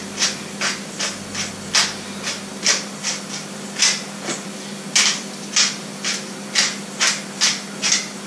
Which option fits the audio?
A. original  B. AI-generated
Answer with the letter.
A